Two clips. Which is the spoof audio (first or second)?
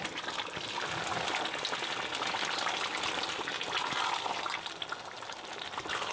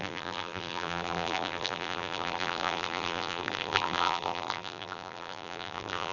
second